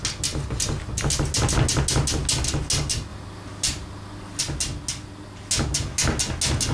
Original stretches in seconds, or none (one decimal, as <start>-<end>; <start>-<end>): 0.0-6.7